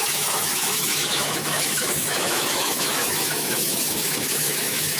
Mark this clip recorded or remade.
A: remade